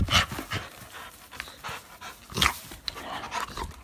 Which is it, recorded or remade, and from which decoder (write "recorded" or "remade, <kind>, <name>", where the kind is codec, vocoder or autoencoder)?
recorded